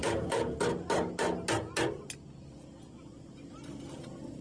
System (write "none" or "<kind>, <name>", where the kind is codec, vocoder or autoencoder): none